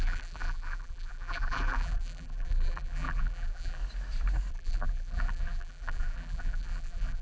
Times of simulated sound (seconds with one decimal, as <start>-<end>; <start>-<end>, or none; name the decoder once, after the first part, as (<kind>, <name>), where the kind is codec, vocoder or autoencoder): 0.0-3.8 (vocoder, BigVGAN v2); 4.5-7.2